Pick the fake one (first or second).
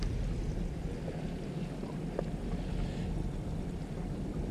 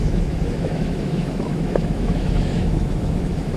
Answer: second